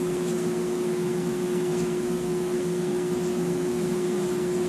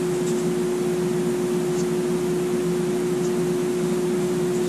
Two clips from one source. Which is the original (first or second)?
second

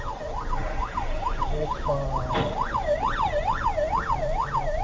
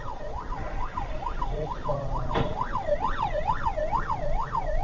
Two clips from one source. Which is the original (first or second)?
first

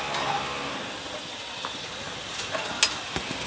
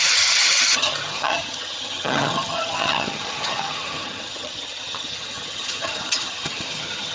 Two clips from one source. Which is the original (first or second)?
first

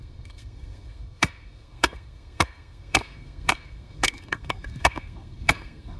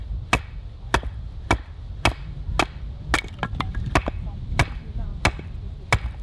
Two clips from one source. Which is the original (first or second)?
second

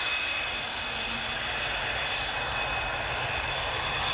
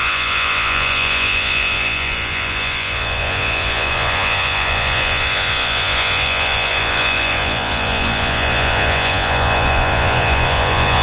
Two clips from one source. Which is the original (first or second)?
first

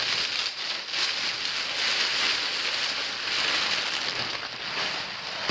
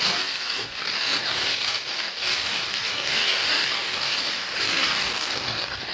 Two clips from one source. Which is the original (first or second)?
first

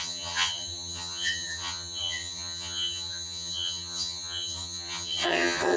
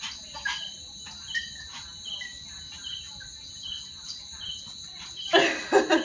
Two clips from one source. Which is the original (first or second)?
second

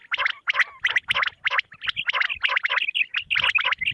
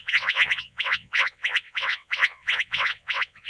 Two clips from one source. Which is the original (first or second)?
first